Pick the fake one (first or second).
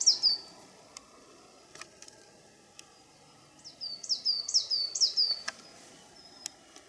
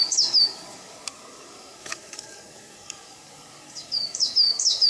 second